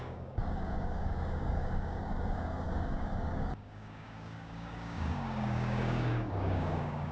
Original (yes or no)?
no